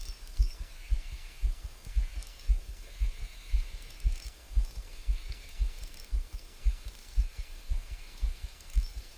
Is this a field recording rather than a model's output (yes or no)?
no